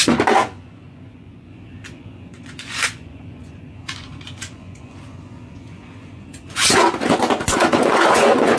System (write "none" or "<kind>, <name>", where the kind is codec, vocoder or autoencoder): vocoder, Vocos